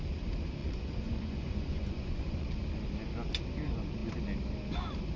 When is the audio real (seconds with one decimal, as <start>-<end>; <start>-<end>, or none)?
0.0-0.6; 2.6-5.2